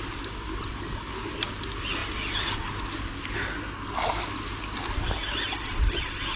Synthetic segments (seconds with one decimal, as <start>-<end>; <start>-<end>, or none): none